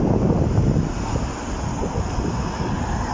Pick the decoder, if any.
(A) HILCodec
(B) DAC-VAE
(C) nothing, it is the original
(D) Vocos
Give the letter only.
C